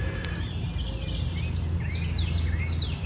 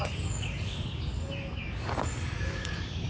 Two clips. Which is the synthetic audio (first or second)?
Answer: second